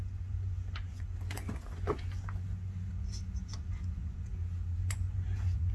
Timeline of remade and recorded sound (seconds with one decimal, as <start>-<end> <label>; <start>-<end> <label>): 0.0-4.3 remade; 4.3-4.8 recorded; 4.8-5.7 remade